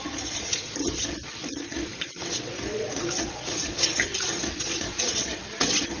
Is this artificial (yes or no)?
yes